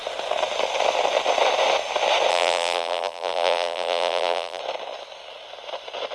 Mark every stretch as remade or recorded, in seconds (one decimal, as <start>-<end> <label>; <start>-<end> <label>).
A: 0.0-2.3 recorded; 2.3-4.6 remade; 4.6-6.1 recorded